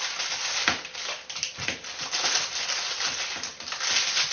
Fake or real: real